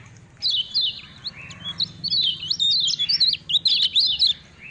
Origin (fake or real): real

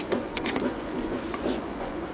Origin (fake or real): fake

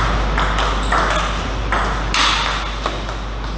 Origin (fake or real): real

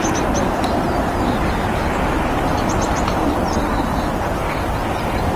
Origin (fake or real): real